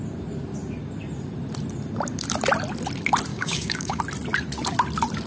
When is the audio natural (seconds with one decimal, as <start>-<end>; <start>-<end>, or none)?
0.0-3.3; 4.0-5.3